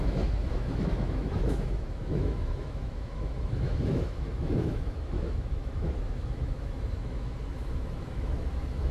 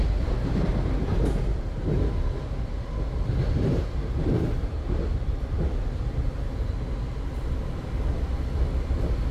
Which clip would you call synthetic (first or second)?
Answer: first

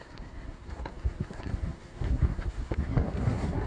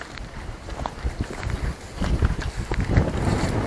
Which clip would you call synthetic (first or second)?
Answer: first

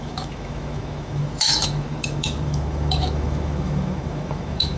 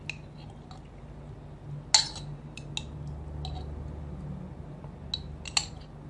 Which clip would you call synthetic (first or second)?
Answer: first